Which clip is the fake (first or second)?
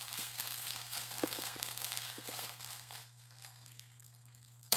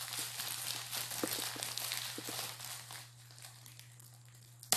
first